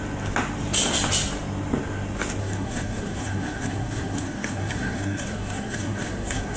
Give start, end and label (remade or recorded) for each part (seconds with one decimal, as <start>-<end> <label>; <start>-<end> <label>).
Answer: 0.0-2.4 recorded; 2.4-6.6 remade